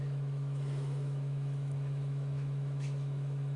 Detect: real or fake fake